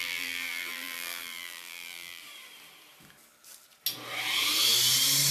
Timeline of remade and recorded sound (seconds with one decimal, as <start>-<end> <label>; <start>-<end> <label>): 0.0-2.2 remade; 2.2-5.3 recorded

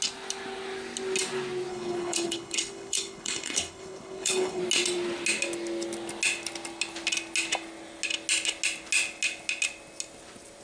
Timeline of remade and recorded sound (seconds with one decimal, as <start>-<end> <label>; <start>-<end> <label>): 0.0-1.7 recorded; 1.7-4.6 remade; 4.6-10.6 recorded

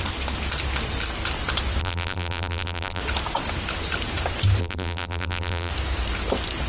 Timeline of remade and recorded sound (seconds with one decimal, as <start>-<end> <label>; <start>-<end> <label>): 0.0-1.8 recorded; 1.8-3.0 remade; 3.0-4.6 recorded; 4.6-5.7 remade; 5.7-6.7 recorded

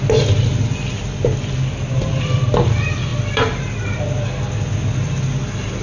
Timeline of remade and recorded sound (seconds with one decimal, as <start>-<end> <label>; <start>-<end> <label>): 0.0-3.1 recorded; 3.1-4.0 remade; 4.0-5.8 recorded

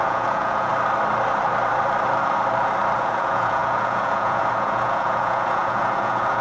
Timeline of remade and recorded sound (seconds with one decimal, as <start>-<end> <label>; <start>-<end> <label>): 0.0-0.7 remade; 0.7-3.0 recorded; 3.0-6.4 remade